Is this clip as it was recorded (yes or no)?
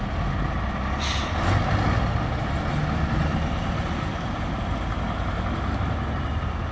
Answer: yes